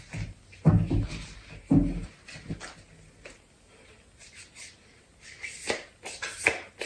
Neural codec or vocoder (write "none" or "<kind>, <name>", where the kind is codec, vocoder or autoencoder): none